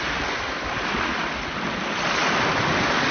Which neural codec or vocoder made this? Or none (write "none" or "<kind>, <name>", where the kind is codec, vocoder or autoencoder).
none